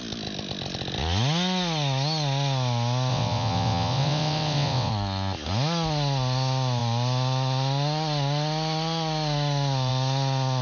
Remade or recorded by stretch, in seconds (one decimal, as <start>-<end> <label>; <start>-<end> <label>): 0.0-3.1 recorded; 3.1-4.9 remade; 4.9-10.6 recorded

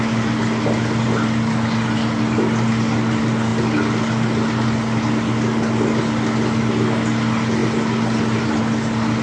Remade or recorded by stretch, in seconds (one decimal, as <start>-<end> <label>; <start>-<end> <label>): 0.0-9.2 recorded

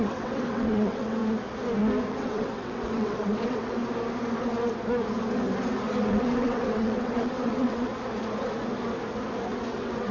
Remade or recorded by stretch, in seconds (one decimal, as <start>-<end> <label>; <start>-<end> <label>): 0.0-1.2 remade; 1.2-2.1 recorded; 2.1-3.8 remade; 3.8-6.0 recorded; 6.0-7.9 remade; 7.9-9.7 recorded; 9.7-10.1 remade

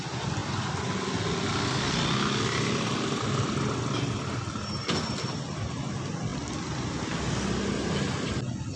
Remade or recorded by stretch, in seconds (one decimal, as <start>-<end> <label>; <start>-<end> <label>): 0.0-8.8 recorded

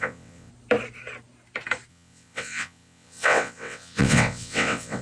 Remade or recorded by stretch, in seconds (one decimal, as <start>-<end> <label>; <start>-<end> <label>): 0.0-0.5 remade; 0.5-1.9 recorded; 1.9-5.0 remade

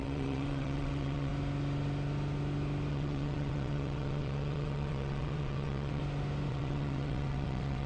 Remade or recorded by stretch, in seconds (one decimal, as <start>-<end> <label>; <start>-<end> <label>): 0.0-1.3 remade; 1.3-2.9 recorded; 2.9-6.0 remade; 6.0-6.5 recorded; 6.5-7.9 remade